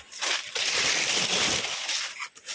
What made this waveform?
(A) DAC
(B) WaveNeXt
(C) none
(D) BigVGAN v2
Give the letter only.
C